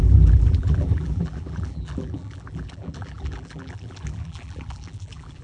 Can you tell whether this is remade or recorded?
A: remade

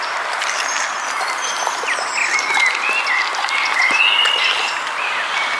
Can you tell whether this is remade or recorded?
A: recorded